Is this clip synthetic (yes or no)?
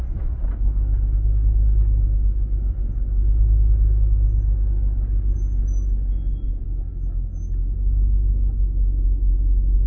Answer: no